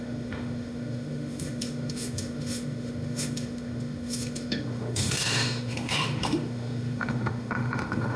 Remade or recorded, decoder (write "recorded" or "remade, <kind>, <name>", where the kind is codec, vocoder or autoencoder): remade, autoencoder, DAC-VAE